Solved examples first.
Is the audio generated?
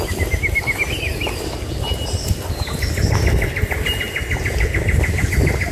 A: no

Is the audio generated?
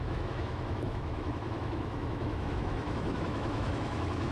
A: yes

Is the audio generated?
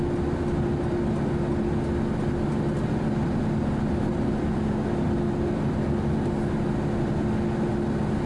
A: no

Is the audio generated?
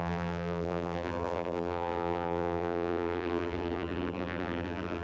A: yes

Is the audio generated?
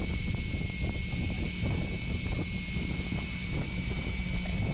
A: no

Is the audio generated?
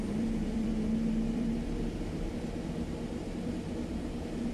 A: yes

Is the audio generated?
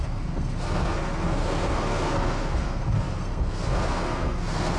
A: yes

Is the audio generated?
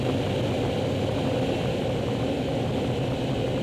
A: no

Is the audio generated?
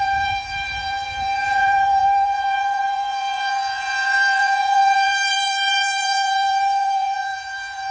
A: yes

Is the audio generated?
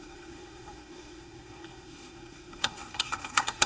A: yes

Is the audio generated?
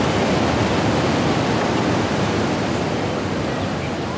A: no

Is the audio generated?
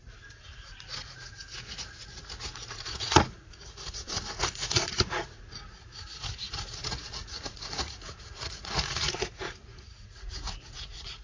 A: yes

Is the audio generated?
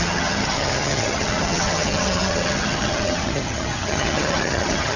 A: yes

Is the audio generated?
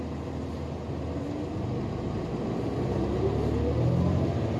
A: no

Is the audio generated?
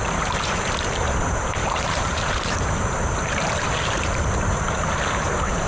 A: yes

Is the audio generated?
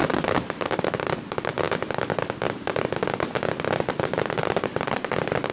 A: no